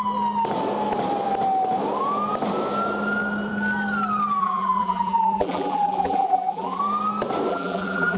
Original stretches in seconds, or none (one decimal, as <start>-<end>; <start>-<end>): 0.0-4.4; 6.8-7.5